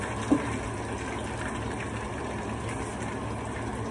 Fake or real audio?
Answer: real